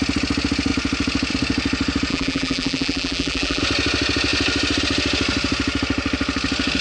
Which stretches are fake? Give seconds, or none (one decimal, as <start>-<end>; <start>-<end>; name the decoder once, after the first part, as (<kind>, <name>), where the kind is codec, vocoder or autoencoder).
2.1-3.6 (vocoder, BigVGAN v2)